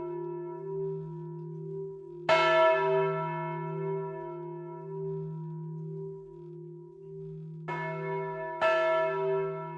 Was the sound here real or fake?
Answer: real